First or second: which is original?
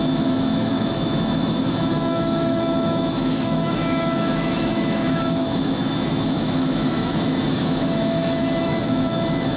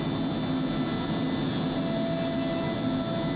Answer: second